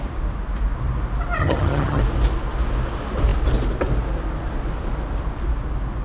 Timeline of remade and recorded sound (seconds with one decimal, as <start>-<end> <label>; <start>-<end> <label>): 0.0-1.4 recorded; 1.4-2.0 remade; 2.0-6.0 recorded